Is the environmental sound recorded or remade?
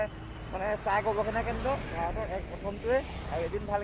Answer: recorded